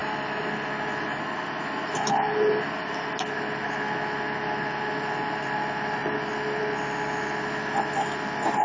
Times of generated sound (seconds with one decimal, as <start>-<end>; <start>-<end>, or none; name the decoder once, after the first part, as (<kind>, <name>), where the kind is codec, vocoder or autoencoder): none